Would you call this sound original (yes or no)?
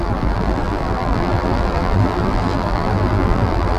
no